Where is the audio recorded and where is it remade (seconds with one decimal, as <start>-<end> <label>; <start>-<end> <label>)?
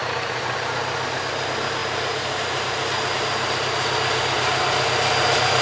0.0-0.8 remade; 0.8-1.8 recorded; 1.8-5.6 remade